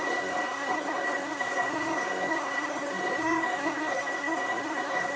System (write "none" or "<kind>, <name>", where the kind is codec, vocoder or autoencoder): codec, SNAC